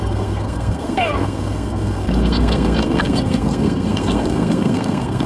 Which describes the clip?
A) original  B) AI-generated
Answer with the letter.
B